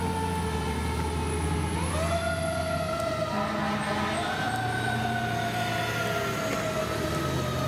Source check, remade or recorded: recorded